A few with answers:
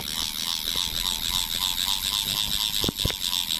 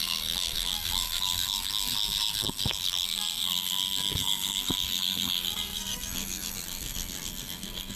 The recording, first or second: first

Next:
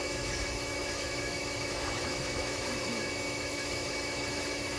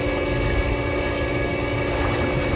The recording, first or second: second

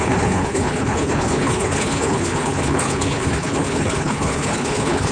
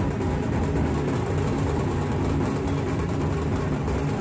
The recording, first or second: second